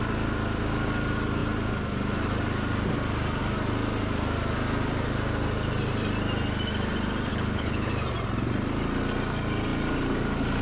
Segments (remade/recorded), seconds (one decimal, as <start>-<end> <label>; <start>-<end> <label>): 0.0-7.3 recorded; 7.3-7.9 remade; 7.9-10.6 recorded